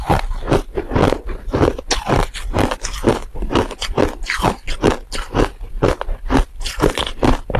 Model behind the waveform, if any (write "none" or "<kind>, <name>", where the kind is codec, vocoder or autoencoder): none